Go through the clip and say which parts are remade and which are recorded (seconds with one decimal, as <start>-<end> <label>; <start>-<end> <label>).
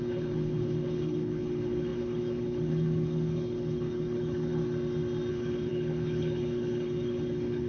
0.0-4.6 remade; 4.6-5.3 recorded; 5.3-7.7 remade